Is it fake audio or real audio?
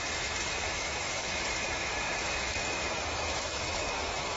fake